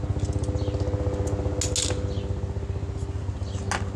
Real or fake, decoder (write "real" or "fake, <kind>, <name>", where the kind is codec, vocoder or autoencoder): real